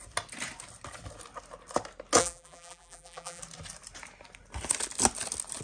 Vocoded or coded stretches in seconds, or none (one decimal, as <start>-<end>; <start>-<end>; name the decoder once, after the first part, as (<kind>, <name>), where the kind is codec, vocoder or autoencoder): 2.2-3.4 (vocoder, BigVGAN v2)